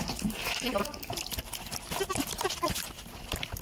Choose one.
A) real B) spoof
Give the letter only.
A